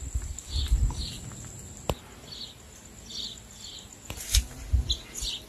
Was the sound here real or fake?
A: real